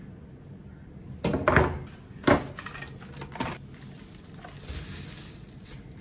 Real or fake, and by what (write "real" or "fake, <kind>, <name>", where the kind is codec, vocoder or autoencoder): real